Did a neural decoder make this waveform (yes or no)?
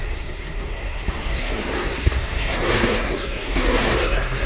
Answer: yes